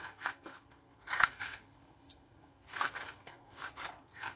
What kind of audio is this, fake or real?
fake